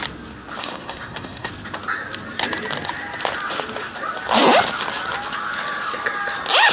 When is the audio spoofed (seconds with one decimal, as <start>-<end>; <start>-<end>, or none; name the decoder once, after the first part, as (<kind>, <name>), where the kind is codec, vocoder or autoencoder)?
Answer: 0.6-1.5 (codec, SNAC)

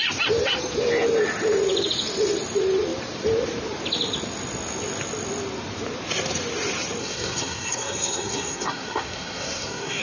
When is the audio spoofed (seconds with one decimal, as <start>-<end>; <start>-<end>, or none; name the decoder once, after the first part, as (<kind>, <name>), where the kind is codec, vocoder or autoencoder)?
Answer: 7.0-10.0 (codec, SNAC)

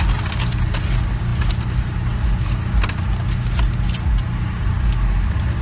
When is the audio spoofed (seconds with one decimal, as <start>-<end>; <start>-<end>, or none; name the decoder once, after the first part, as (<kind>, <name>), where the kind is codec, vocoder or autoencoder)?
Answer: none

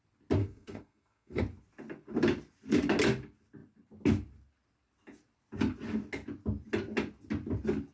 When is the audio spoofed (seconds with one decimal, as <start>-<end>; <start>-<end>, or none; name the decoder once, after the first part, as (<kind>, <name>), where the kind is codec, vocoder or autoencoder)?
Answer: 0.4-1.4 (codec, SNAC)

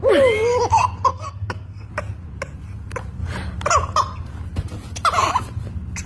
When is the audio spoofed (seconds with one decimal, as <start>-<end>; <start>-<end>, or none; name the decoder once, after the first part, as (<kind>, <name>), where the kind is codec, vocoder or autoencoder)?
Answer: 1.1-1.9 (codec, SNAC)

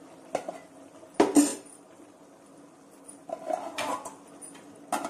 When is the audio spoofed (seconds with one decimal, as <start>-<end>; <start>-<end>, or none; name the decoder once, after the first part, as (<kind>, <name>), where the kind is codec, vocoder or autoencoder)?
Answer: none

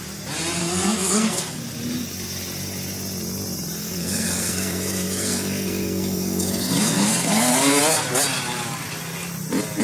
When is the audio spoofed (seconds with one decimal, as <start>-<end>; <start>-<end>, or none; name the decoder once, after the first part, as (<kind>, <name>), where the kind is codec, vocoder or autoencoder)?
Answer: 0.6-1.6 (codec, SNAC); 3.8-7.8